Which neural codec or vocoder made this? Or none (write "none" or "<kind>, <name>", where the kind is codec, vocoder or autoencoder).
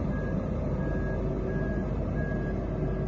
none